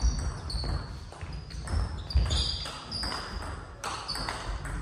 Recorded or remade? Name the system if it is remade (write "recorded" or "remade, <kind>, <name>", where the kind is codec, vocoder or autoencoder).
recorded